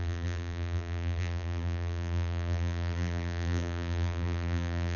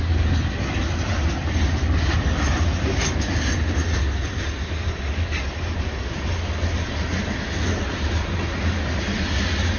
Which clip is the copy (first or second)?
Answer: first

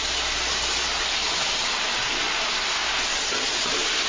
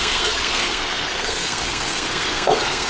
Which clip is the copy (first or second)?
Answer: second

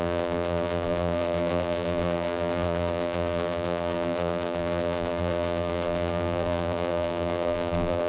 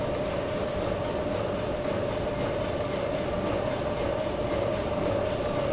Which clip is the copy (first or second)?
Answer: first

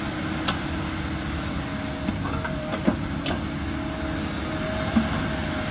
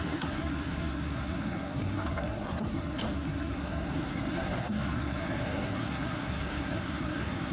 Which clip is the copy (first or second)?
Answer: second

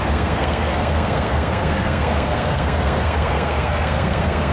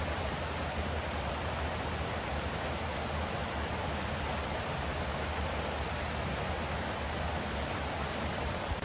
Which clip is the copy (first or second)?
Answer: first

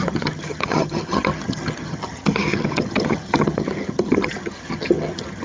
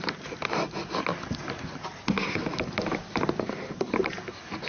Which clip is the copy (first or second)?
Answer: first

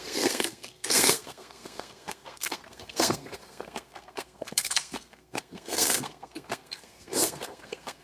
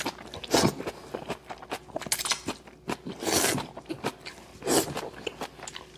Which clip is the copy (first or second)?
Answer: first